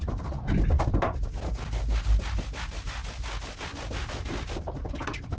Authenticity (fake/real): real